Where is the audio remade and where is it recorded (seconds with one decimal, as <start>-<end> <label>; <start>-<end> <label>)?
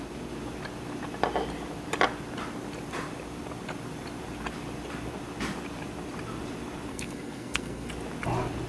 0.0-6.9 recorded; 6.9-7.9 remade; 7.9-8.7 recorded